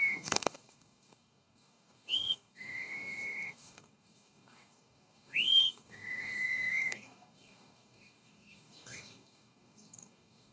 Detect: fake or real fake